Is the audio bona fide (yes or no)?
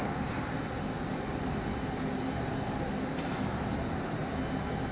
yes